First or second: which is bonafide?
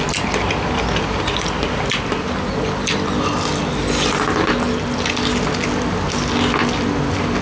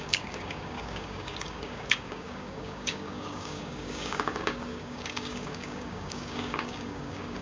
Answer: first